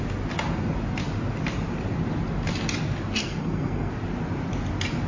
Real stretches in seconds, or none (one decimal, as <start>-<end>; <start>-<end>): 0.0-3.2; 3.9-5.1